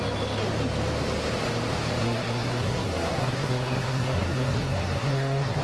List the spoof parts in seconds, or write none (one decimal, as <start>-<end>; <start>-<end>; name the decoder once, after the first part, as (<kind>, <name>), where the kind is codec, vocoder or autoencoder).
2.0-5.6 (codec, SNAC)